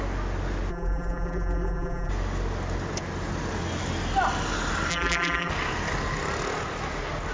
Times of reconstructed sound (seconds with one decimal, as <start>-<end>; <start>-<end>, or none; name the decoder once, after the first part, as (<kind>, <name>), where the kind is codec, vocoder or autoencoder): 0.7-2.1 (vocoder, BigVGAN v2); 4.9-5.5